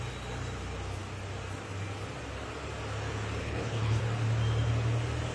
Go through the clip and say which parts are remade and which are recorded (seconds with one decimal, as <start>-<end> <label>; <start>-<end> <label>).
0.0-3.4 recorded; 3.4-4.0 remade; 4.0-5.3 recorded